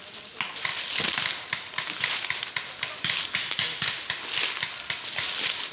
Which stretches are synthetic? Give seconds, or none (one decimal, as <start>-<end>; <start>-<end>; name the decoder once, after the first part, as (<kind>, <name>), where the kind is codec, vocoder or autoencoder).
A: none